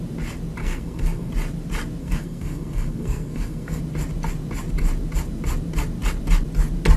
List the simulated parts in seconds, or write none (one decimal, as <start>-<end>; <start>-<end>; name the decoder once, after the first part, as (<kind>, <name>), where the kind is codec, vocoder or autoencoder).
0.6-1.3 (codec, SNAC); 2.0-3.8